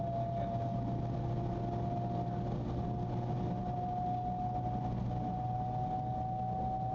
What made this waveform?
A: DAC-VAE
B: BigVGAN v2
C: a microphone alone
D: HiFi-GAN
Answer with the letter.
C